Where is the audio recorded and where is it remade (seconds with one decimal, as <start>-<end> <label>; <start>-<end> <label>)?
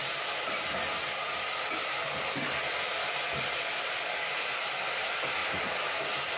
0.0-5.4 recorded; 5.4-6.4 remade